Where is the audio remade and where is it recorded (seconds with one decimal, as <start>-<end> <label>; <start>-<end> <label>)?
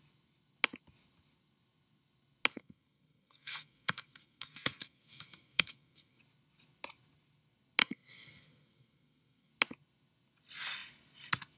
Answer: 0.0-2.5 recorded; 2.5-6.2 remade; 6.2-7.8 recorded; 7.8-9.5 remade; 9.5-11.6 recorded